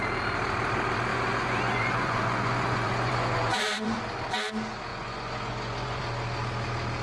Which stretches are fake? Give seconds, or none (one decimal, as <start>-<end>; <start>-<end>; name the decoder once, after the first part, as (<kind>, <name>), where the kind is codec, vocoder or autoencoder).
1.1-4.0 (vocoder, Vocos); 4.9-6.0